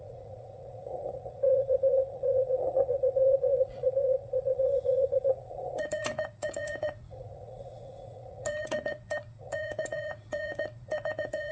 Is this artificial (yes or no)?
yes